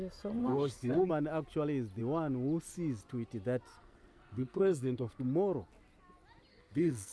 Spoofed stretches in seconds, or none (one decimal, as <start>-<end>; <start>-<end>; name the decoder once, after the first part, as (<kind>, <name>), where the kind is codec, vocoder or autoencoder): 0.4-1.1 (codec, SNAC); 3.7-5.2; 6.5-7.1